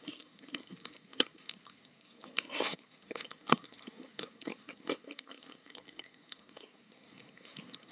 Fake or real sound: fake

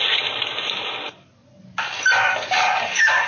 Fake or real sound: real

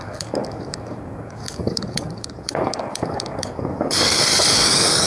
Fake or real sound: fake